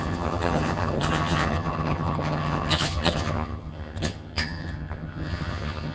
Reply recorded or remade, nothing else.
remade